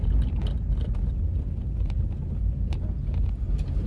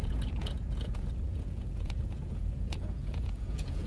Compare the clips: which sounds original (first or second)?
first